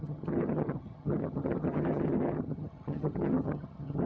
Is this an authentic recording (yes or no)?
no